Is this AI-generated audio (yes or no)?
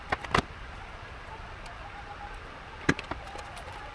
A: no